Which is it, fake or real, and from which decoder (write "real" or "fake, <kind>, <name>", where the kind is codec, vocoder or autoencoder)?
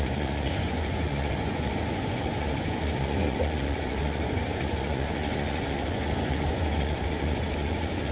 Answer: fake, vocoder, Vocos